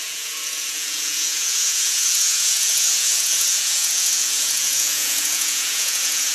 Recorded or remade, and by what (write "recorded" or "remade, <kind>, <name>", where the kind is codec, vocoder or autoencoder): remade, vocoder, Vocos